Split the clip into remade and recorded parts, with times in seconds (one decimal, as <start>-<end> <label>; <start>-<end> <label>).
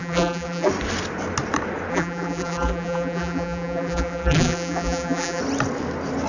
0.0-0.7 remade; 0.7-1.9 recorded; 1.9-5.4 remade; 5.4-6.3 recorded